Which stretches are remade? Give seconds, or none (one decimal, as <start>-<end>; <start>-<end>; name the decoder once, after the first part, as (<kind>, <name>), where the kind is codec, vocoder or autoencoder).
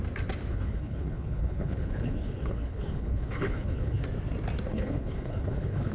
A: 0.5-4.0 (codec, HILCodec); 4.7-5.9